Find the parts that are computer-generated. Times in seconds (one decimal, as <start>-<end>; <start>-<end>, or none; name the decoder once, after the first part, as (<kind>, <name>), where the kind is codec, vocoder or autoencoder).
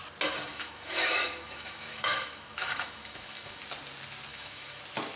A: 0.5-3.6 (autoencoder, DAC-VAE); 4.3-4.8